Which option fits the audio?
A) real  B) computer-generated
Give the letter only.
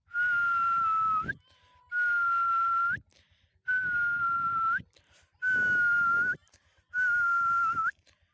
A